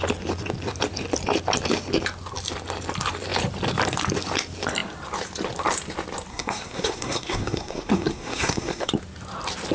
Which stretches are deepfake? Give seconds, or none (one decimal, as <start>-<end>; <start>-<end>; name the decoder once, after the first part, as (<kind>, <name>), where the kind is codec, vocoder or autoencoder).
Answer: 6.3-8.9 (codec, SNAC)